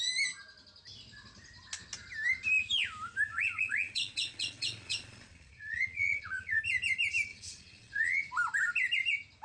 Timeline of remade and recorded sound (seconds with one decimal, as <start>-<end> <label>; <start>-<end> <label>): 0.0-3.3 recorded; 3.3-6.6 remade; 6.6-7.3 recorded; 7.3-8.3 remade; 8.3-9.4 recorded